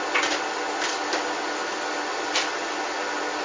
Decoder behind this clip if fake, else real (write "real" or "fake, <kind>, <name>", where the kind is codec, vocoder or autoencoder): real